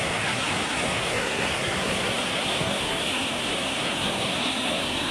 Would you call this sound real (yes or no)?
no